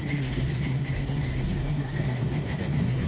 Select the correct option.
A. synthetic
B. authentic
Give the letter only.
A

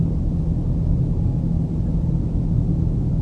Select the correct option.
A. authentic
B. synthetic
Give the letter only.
A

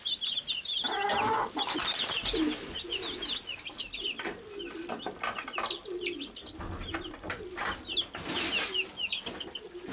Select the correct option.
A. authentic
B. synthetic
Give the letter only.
A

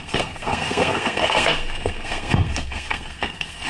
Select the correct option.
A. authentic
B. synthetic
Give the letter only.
B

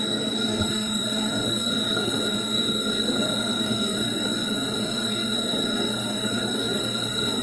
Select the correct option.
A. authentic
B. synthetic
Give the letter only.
B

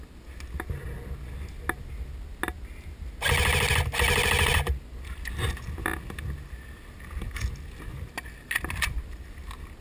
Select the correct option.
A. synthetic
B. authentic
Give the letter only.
B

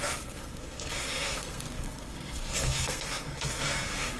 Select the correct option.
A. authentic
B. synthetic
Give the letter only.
B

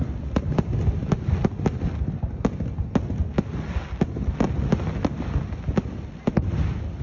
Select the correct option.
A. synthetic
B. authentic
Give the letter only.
B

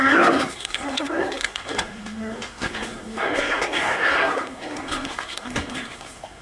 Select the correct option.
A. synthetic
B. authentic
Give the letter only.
A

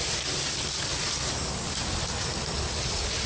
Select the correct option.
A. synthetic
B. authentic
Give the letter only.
B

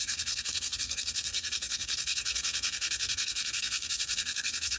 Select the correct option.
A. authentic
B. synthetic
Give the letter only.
B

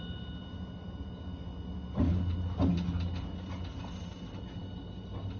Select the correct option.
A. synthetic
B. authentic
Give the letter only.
B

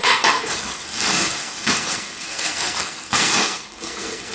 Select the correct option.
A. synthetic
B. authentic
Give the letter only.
A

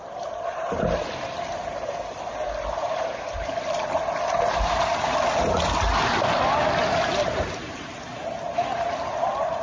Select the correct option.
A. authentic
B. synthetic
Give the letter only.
A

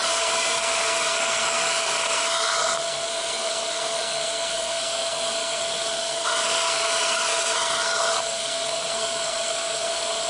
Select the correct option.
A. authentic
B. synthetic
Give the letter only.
B